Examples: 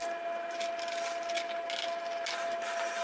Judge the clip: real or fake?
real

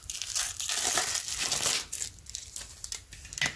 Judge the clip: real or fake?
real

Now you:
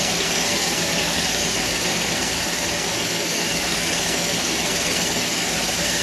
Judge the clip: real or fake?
fake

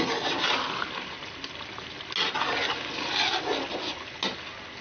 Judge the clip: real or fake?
real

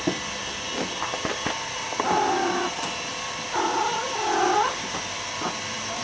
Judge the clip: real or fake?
real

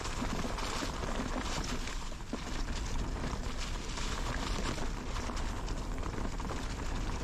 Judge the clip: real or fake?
real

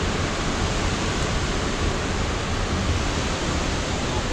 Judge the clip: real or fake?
real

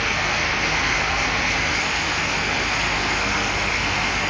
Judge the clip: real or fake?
fake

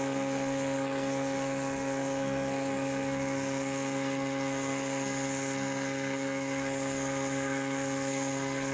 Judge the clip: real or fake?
fake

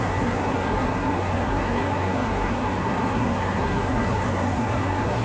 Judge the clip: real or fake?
fake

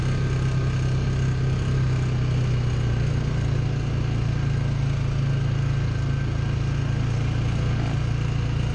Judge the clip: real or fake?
real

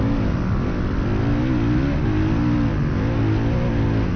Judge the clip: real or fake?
real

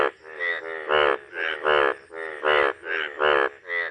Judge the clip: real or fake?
real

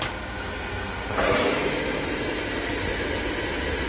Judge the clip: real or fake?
real